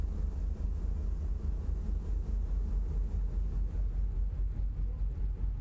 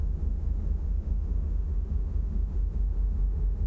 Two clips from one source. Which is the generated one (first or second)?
second